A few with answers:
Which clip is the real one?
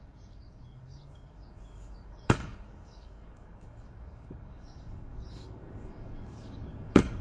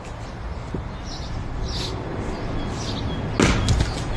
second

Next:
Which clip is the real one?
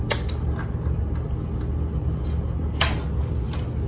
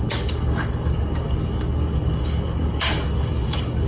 first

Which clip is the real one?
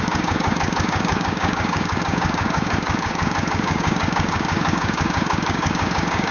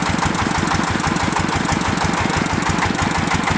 second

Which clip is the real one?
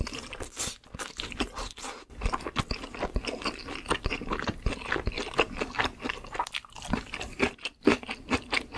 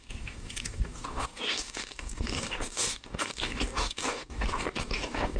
first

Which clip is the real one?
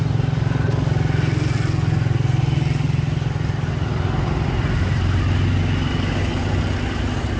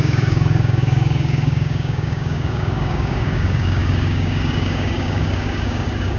first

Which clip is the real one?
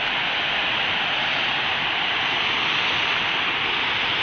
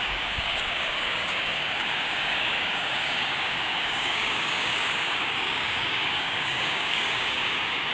first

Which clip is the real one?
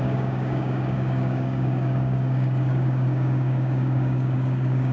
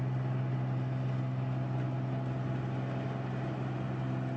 second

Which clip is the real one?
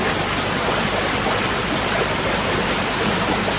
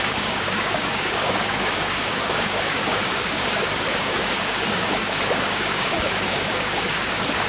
first